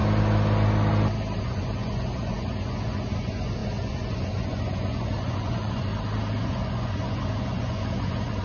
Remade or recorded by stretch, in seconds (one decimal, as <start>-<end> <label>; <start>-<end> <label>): 0.0-1.4 recorded; 1.4-5.9 remade; 5.9-6.4 recorded; 6.4-8.4 remade